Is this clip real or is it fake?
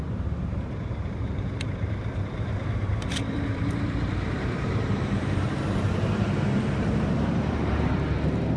fake